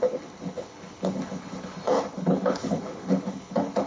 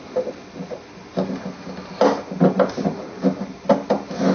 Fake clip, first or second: first